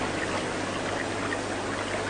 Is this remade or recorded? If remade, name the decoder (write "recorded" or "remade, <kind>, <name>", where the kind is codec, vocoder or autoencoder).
recorded